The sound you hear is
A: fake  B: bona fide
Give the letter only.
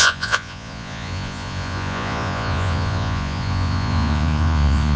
A